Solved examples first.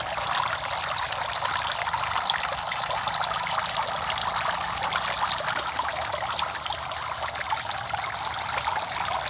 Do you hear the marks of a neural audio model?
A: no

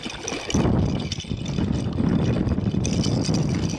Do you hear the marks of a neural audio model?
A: no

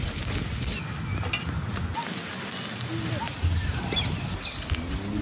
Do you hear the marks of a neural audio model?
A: no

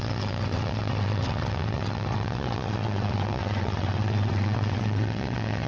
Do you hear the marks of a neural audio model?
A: yes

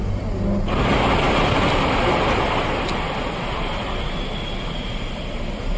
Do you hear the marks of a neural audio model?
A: no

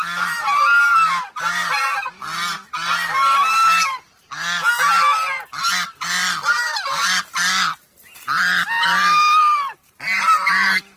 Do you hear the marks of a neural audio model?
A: no